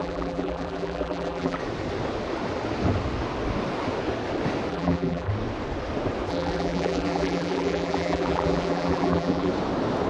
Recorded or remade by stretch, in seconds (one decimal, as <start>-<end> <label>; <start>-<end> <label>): 0.0-1.6 remade; 1.6-4.7 recorded; 4.7-5.3 remade; 5.3-6.3 recorded; 6.3-9.5 remade; 9.5-10.1 recorded